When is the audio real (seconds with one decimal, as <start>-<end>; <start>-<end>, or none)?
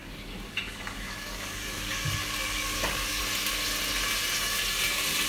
3.2-5.3